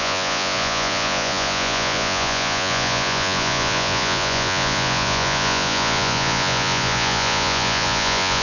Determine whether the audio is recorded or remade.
remade